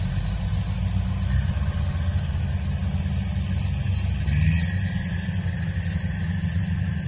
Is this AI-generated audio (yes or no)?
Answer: no